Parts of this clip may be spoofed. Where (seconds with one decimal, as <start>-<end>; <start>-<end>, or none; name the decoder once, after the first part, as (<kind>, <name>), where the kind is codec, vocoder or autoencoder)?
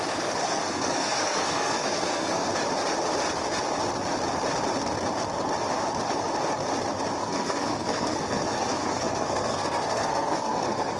0.4-2.5 (codec, SNAC); 7.2-11.0